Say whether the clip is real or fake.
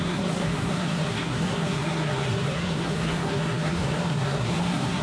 fake